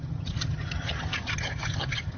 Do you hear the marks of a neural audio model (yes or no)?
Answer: yes